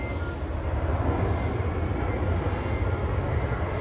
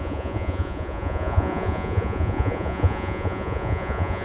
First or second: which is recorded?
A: first